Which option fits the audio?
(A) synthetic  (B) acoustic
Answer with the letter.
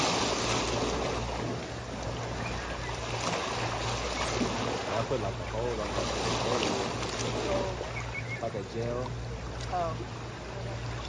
B